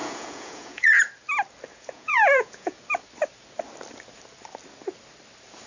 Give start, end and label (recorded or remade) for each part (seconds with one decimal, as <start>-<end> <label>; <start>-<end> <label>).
0.0-1.0 remade; 1.0-1.7 recorded; 1.7-2.8 remade; 2.8-5.7 recorded